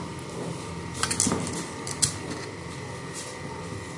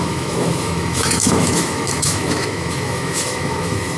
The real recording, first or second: first